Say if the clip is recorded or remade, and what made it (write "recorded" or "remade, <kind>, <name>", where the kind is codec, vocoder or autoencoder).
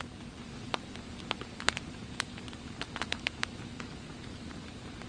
recorded